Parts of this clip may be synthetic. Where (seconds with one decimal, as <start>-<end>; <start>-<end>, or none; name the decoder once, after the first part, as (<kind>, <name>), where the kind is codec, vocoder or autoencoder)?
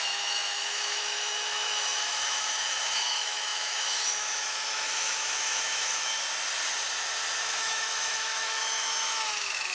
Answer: 0.0-6.1 (autoencoder, DAC-VAE); 7.4-9.7